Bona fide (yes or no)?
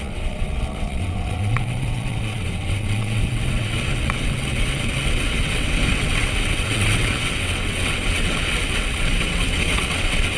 no